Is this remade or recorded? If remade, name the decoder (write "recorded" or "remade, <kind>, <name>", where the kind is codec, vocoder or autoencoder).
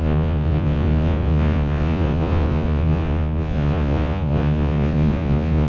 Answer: remade, vocoder, Vocos